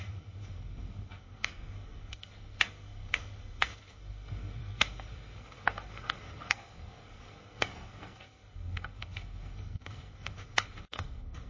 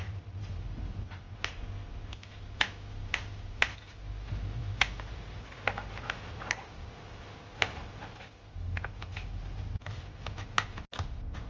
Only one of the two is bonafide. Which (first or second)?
second